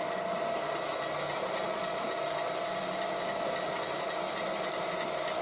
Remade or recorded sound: recorded